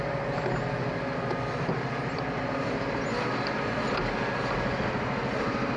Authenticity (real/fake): real